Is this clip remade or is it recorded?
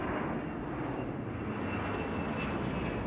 recorded